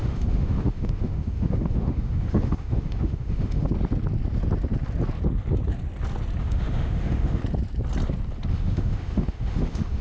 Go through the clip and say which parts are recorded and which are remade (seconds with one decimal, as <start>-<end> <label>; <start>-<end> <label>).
0.0-3.7 remade; 3.7-6.4 recorded; 6.4-7.4 remade; 7.4-8.5 recorded; 8.5-10.0 remade